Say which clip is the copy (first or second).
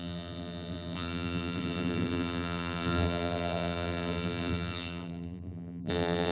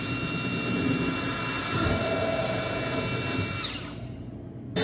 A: first